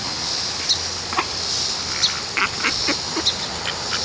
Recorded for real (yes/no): yes